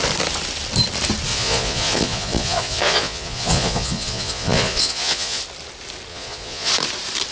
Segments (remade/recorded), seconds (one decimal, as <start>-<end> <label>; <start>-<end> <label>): 0.0-1.3 recorded; 1.3-5.4 remade; 5.4-6.1 recorded; 6.1-6.7 remade; 6.7-7.3 recorded